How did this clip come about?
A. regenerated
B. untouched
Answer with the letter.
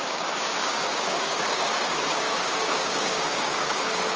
A